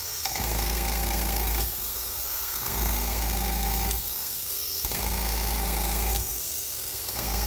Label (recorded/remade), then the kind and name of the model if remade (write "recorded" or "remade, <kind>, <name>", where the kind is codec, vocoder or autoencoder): remade, codec, SNAC